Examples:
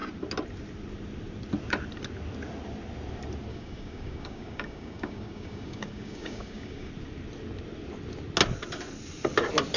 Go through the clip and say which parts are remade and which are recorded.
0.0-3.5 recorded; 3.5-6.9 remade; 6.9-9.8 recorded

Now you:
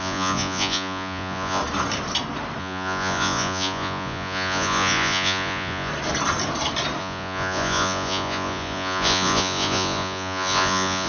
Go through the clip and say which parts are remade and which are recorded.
0.0-1.6 remade; 1.6-2.6 recorded; 2.6-5.9 remade; 5.9-7.0 recorded; 7.0-11.1 remade

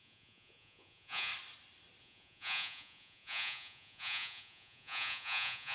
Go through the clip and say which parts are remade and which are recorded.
0.0-1.3 remade; 1.3-2.0 recorded; 2.0-5.7 remade

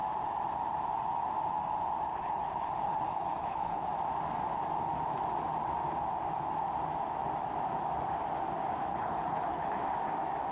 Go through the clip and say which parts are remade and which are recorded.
0.0-2.1 recorded; 2.1-3.9 remade; 3.9-8.9 recorded; 8.9-9.8 remade; 9.8-10.5 recorded

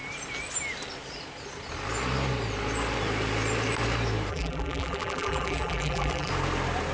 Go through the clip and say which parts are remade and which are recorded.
0.0-4.3 recorded; 4.3-6.3 remade; 6.3-6.9 recorded

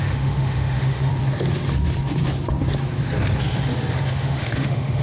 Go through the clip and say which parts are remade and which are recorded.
0.0-1.1 remade; 1.1-4.1 recorded; 4.1-5.0 remade

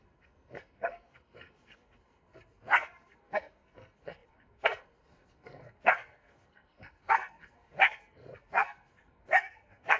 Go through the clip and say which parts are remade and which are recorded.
0.0-10.0 remade

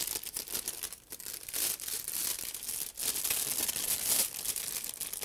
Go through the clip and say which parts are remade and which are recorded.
0.0-5.2 recorded